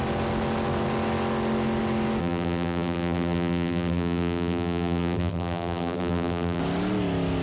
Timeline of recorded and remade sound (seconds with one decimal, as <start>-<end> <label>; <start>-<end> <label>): 0.0-2.2 recorded; 2.2-6.6 remade; 6.6-7.4 recorded